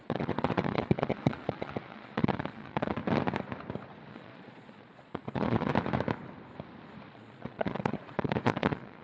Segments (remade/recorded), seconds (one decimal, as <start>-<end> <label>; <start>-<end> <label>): 0.0-3.0 remade; 3.0-4.1 recorded; 4.1-5.7 remade; 5.7-7.1 recorded; 7.1-9.0 remade